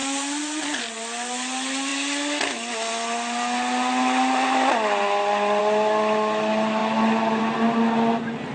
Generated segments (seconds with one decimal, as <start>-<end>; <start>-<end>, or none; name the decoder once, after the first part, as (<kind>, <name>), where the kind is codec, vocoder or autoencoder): none